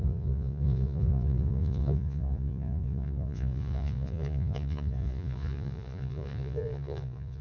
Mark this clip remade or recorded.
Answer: remade